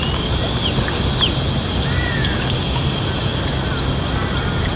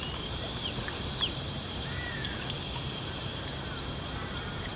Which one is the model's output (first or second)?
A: second